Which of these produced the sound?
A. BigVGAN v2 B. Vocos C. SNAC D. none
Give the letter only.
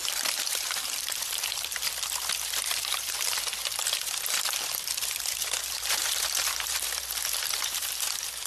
A